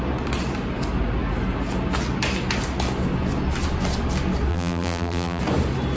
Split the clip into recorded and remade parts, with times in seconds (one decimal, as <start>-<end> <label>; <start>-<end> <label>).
0.0-4.5 recorded; 4.5-5.4 remade; 5.4-6.0 recorded